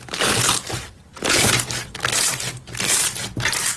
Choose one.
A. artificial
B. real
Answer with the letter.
A